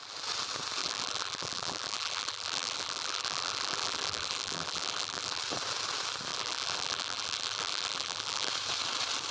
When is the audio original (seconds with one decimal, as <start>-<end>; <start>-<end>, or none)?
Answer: 0.0-0.8; 5.4-6.3; 8.5-9.3